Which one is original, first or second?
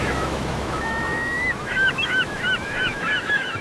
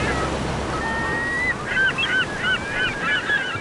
second